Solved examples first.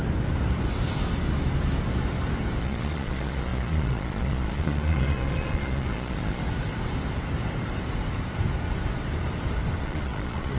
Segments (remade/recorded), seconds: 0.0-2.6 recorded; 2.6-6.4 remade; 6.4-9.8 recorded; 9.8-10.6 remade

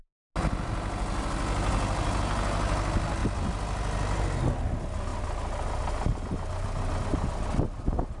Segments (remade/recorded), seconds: 0.0-8.2 recorded

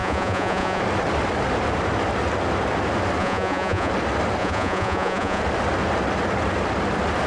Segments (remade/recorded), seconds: 0.0-0.8 remade; 0.8-3.2 recorded; 3.2-3.9 remade; 3.9-4.4 recorded; 4.4-5.4 remade; 5.4-7.3 recorded

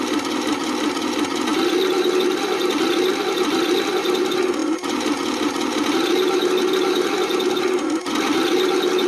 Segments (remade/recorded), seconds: 0.0-9.1 recorded

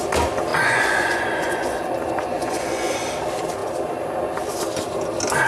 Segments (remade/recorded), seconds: 0.0-0.5 recorded; 0.5-2.9 remade; 2.9-5.5 recorded